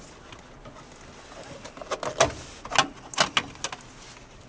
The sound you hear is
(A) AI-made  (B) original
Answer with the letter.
B